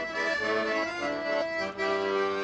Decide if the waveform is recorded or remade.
recorded